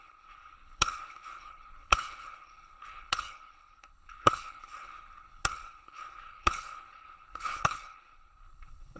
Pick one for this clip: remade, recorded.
remade